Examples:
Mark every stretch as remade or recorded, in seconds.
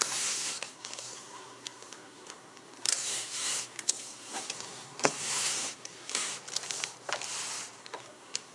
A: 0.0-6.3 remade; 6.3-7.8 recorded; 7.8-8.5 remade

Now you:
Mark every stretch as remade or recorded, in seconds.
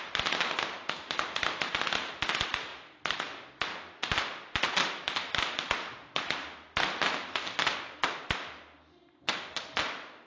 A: 0.0-10.3 recorded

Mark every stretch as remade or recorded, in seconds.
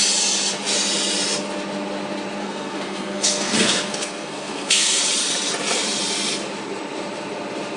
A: 0.0-2.4 recorded; 2.4-5.0 remade; 5.0-7.8 recorded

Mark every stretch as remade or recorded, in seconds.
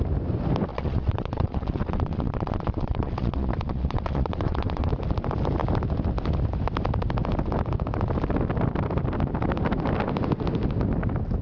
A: 0.0-0.7 recorded; 0.7-4.9 remade; 4.9-11.4 recorded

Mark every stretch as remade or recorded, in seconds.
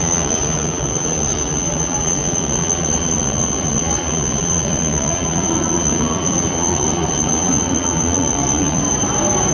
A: 0.0-8.8 remade; 8.8-9.5 recorded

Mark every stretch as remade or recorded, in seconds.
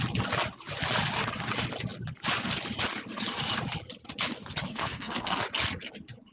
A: 0.0-4.7 recorded; 4.7-5.4 remade; 5.4-6.3 recorded